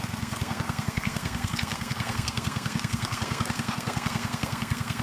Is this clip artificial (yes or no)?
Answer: yes